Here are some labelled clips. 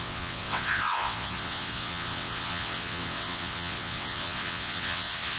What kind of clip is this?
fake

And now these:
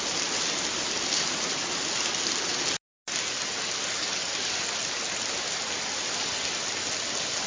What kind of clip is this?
real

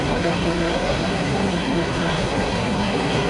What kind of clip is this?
fake